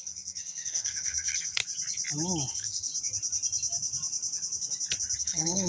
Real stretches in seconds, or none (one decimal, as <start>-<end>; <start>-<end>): 1.6-2.5; 2.9-5.2